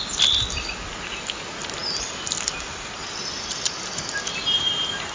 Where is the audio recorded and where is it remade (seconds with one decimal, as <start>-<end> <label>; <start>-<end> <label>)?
0.0-5.1 recorded